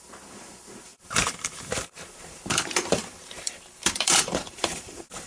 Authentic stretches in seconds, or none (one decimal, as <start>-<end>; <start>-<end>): none